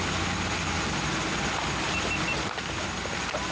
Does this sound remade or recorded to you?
recorded